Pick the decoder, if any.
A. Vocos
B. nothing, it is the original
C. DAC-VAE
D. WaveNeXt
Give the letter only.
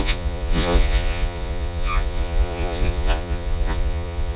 A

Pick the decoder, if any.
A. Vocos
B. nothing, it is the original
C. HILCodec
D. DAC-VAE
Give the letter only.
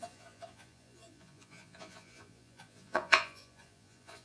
A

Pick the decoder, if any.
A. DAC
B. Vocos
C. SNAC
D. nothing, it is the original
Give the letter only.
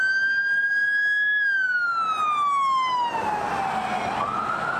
D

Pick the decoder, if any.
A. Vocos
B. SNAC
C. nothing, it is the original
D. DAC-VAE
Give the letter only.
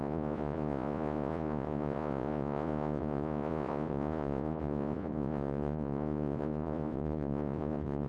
A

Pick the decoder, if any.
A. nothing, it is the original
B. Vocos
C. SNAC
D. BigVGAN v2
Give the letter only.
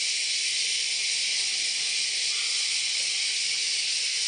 A